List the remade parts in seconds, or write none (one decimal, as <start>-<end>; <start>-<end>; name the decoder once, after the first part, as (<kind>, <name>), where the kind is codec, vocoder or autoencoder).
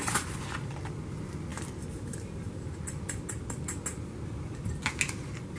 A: none